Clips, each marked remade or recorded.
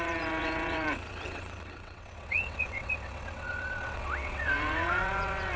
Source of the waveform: remade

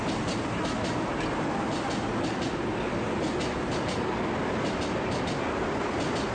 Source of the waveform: recorded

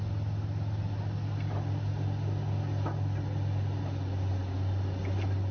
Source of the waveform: recorded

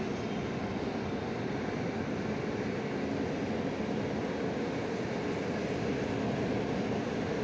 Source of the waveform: recorded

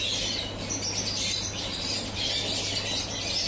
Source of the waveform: recorded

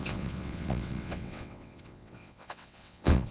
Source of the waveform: remade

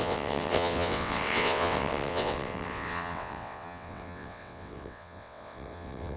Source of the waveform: remade